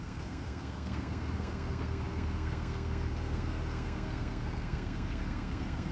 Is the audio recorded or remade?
remade